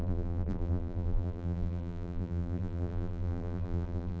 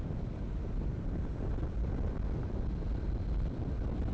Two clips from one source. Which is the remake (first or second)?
first